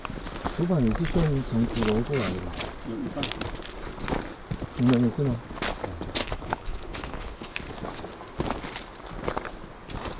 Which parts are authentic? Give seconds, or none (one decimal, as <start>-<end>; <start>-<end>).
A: 0.0-6.2; 7.5-10.2